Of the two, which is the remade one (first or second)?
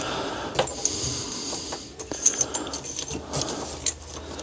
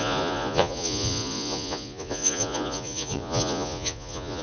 second